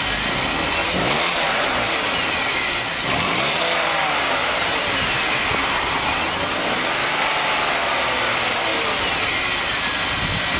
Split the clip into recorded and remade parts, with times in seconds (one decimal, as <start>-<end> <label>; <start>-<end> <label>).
0.0-8.7 recorded; 8.7-9.2 remade; 9.2-10.6 recorded